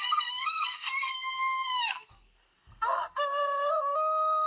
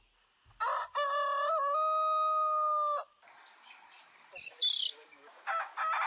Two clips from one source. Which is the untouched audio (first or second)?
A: second